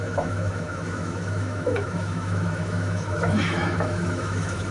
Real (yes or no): no